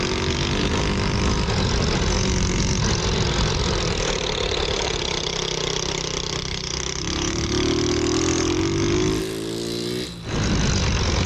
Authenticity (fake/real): real